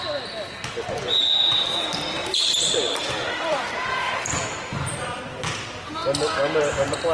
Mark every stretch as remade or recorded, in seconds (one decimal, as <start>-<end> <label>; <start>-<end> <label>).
0.0-3.0 recorded; 3.0-5.2 remade; 5.2-7.1 recorded